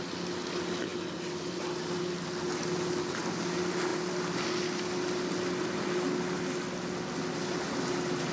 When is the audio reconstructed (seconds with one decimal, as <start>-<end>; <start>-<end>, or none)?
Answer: none